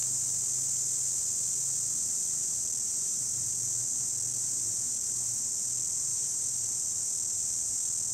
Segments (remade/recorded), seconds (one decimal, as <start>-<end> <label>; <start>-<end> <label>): 0.0-2.9 recorded; 2.9-3.5 remade; 3.5-4.3 recorded; 4.3-5.5 remade; 5.5-6.1 recorded; 6.1-6.7 remade; 6.7-8.1 recorded